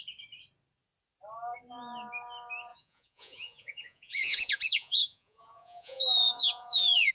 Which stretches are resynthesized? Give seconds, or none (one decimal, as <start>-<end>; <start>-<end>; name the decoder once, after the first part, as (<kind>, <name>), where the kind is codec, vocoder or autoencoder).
2.7-7.1 (vocoder, Vocos)